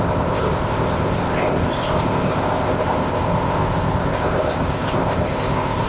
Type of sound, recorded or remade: remade